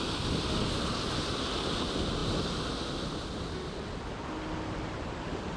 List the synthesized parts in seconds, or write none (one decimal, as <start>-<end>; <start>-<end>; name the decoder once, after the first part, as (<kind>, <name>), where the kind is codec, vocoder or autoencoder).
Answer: none